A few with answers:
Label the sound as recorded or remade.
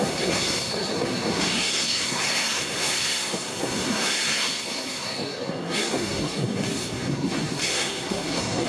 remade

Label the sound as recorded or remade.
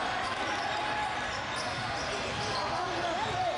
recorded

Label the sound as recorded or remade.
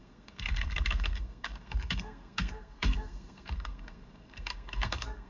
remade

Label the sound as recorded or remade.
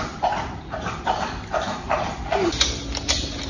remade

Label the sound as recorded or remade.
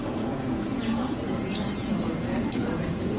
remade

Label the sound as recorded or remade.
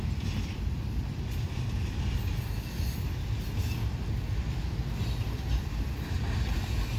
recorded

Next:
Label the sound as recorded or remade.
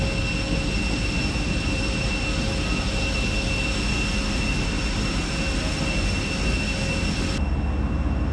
recorded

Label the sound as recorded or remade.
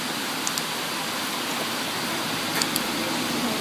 recorded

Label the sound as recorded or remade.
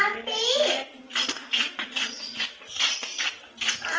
recorded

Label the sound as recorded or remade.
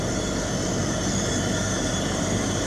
recorded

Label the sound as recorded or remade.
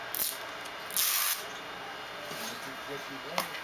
recorded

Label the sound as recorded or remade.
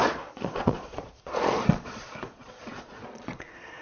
remade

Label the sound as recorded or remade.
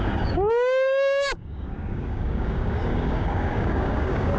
remade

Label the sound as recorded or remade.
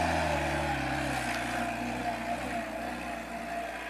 recorded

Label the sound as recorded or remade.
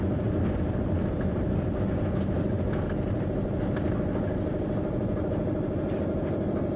recorded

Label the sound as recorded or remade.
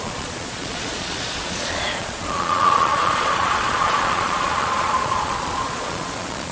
remade